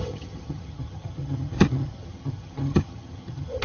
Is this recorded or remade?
remade